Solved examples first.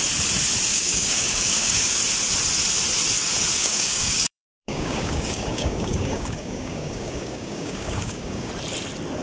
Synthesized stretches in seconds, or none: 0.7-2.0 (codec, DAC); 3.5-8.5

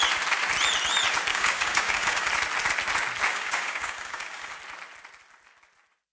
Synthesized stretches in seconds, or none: 1.3-2.3 (codec, DAC); 3.3-4.6

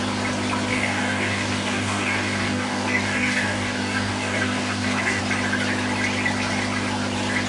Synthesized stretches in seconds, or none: 0.7-5.2 (codec, DAC)

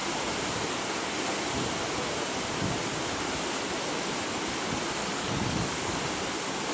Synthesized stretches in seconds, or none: 5.0-6.0 (codec, DAC)

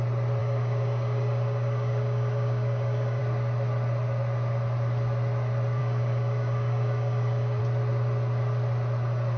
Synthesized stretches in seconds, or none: 0.4-3.2 (codec, DAC); 5.8-7.6

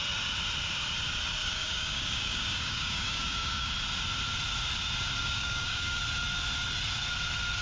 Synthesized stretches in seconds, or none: 1.4-3.7 (codec, DAC); 5.2-6.0

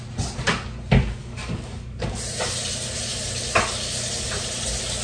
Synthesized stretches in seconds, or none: 1.2-2.2 (codec, DAC)

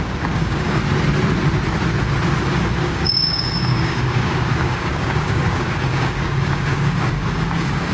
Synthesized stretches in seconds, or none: 0.0-0.8 (codec, DAC); 2.4-7.9